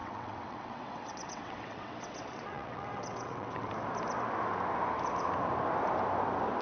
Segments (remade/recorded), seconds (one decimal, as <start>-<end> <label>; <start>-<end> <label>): 0.0-3.7 remade; 3.7-6.6 recorded